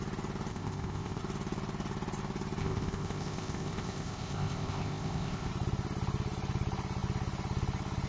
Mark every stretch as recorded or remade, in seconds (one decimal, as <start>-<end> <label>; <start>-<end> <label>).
0.0-0.5 recorded; 0.5-1.2 remade; 1.2-2.6 recorded; 2.6-5.5 remade; 5.5-8.1 recorded